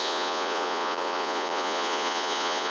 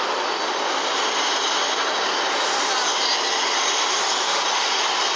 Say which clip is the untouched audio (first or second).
second